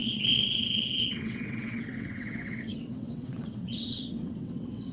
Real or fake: fake